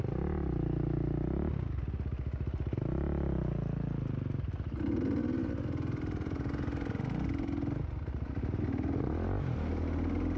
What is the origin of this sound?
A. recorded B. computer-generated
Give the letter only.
A